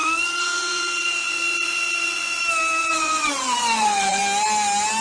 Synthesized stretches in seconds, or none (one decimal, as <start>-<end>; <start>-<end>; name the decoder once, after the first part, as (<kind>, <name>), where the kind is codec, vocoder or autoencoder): 0.0-2.4 (vocoder, Vocos); 2.8-4.2